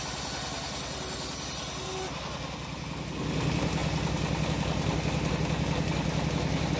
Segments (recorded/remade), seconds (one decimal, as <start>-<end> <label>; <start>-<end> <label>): 0.0-6.8 recorded